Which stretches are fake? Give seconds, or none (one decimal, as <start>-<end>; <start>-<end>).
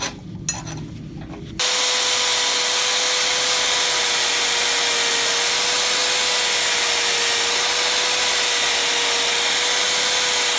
none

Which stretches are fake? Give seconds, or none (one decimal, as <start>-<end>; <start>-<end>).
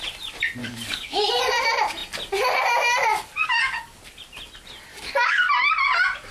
0.6-1.4; 3.4-4.0; 4.9-5.5